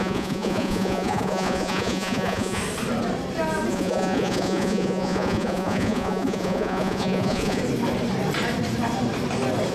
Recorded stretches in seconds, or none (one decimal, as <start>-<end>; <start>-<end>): 2.6-3.7; 7.6-9.7

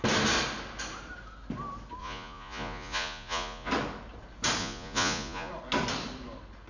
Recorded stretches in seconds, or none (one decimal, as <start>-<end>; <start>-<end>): 0.0-2.0; 3.7-4.6; 5.5-6.7

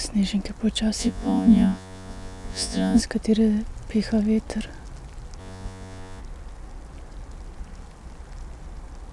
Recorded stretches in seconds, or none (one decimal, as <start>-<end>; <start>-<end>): 0.0-1.0; 3.0-5.4; 6.2-9.1

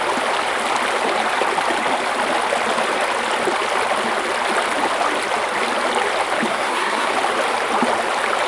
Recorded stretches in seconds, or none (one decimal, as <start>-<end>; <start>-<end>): 0.0-6.5; 7.1-8.5

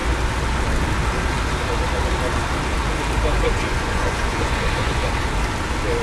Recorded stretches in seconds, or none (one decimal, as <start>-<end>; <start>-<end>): 0.0-3.3; 5.1-6.0

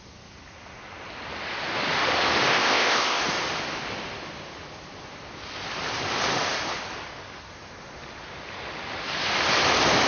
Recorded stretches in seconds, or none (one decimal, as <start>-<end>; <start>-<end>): 0.0-2.5; 3.2-10.1